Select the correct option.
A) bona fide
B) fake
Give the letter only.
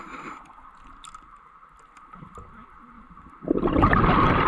A